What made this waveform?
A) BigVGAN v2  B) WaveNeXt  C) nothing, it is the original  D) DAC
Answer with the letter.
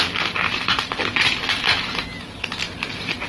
C